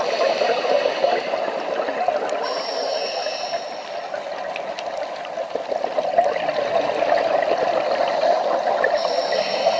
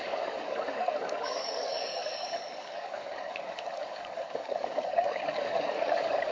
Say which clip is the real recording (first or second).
first